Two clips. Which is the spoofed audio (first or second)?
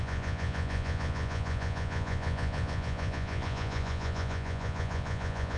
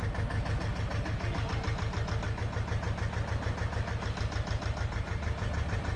first